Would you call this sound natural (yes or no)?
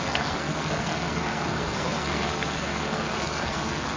no